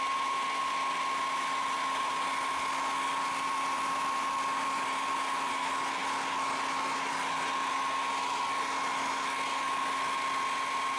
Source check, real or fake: real